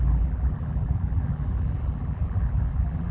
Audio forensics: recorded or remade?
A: remade